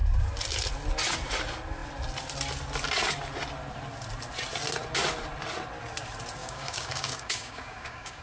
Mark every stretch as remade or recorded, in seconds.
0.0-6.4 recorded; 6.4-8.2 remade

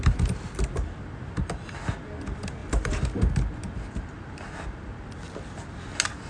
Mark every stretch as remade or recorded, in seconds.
0.0-2.6 recorded; 2.6-3.3 remade; 3.3-6.3 recorded

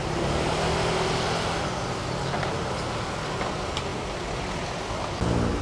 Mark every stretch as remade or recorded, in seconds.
0.0-2.0 recorded; 2.0-2.7 remade; 2.7-5.6 recorded

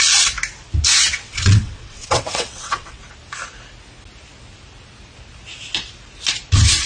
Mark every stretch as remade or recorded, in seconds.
0.0-0.9 recorded; 0.9-3.0 remade; 3.0-6.9 recorded

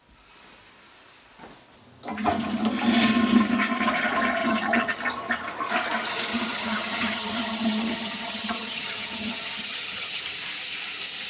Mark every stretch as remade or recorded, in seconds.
0.0-4.4 recorded; 4.4-5.0 remade; 5.0-6.3 recorded; 6.3-10.2 remade; 10.2-11.3 recorded

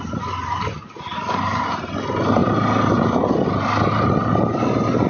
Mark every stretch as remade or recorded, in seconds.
0.0-5.1 recorded